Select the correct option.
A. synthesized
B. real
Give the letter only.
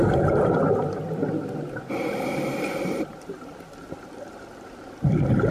B